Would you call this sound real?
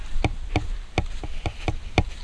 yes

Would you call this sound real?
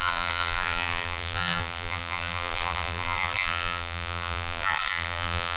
no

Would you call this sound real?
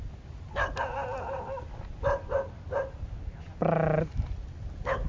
yes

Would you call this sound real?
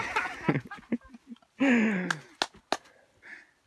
yes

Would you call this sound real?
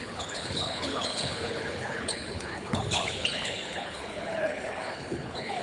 no